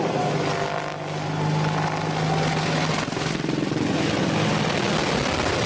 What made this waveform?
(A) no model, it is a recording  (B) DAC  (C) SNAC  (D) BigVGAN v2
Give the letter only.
A